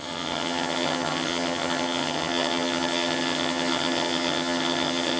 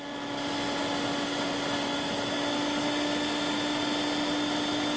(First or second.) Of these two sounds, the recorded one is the second